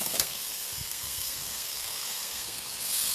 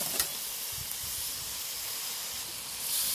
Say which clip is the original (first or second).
second